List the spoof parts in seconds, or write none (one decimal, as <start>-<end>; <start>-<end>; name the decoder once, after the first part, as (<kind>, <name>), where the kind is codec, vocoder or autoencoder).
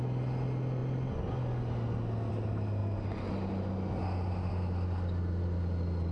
none